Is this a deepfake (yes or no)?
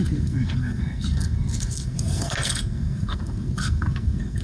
yes